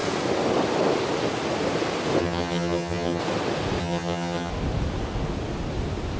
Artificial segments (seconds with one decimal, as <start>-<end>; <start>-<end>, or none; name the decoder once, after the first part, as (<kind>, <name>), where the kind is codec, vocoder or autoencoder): 2.2-3.2 (vocoder, HiFi-GAN); 3.8-4.5